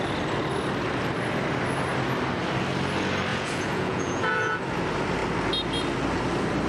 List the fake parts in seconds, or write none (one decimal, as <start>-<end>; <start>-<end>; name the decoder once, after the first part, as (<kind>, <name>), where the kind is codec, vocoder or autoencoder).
3.3-4.6 (vocoder, Vocos)